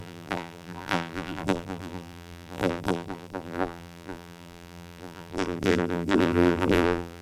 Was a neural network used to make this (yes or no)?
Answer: yes